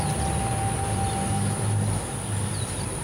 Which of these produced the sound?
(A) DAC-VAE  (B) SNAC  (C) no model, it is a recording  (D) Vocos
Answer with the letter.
C